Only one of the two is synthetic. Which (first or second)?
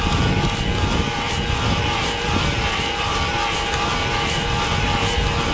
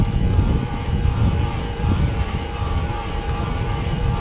second